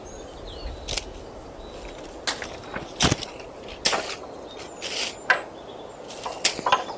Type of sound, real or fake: real